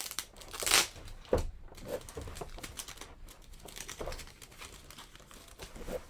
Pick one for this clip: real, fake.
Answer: real